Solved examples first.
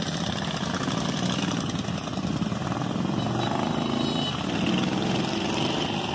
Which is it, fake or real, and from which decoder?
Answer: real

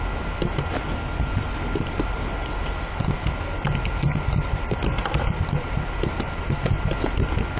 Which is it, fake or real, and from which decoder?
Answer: real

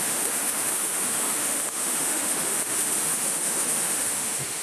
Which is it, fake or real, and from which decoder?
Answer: fake, autoencoder, DAC-VAE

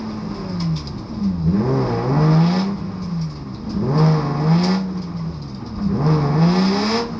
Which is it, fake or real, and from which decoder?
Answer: real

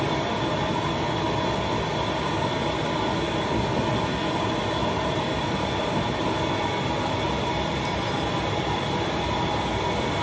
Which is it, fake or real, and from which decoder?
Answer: real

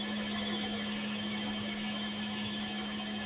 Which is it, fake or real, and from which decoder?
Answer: fake, autoencoder, DAC-VAE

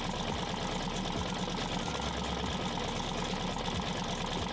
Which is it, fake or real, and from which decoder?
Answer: real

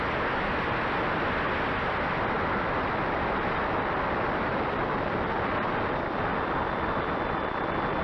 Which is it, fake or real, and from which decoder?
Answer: real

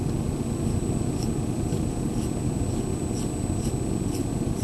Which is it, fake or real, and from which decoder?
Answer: real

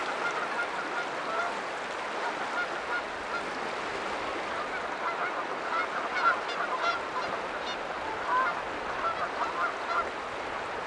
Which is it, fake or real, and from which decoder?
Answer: real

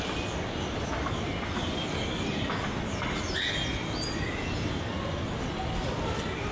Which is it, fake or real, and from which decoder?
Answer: real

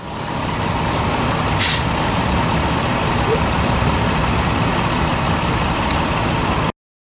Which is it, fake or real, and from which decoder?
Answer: real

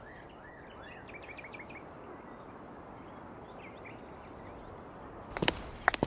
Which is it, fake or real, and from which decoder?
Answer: real